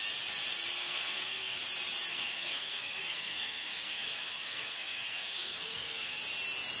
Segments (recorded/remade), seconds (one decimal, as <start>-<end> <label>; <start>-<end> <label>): 0.0-0.8 recorded; 0.8-1.6 remade; 1.6-2.1 recorded; 2.1-6.2 remade; 6.2-6.8 recorded